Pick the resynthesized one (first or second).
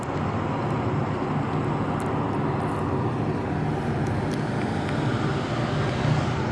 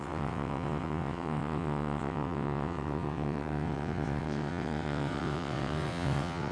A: second